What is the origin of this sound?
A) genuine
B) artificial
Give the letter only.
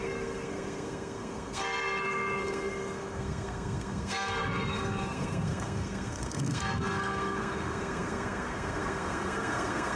B